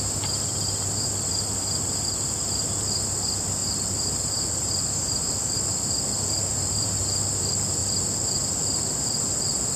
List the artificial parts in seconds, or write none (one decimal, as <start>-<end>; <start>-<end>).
3.6-5.3; 6.5-7.0